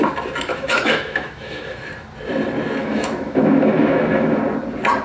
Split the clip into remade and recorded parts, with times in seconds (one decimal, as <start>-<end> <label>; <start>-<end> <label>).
0.0-0.5 recorded; 0.5-1.8 remade; 1.8-2.8 recorded; 2.8-4.4 remade; 4.4-5.0 recorded